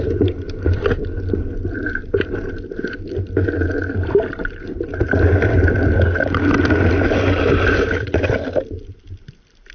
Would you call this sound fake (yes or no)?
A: no